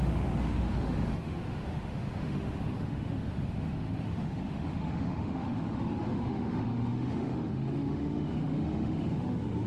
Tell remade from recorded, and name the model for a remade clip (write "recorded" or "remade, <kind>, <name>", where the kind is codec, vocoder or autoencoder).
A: remade, autoencoder, DAC-VAE